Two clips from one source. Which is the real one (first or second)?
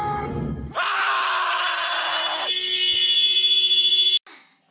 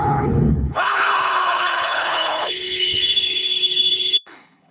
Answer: first